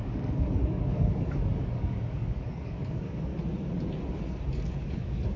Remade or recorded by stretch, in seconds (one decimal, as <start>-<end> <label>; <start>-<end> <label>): 0.0-3.3 remade; 3.3-4.5 recorded; 4.5-5.4 remade